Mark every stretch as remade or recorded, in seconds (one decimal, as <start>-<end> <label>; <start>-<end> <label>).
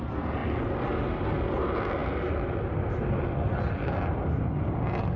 0.0-5.2 recorded